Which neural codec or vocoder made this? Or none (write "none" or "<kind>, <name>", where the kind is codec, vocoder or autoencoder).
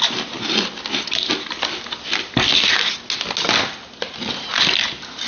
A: none